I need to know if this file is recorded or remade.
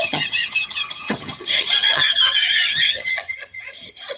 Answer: remade